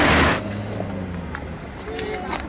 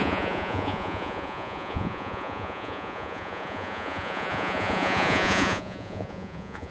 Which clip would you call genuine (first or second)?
first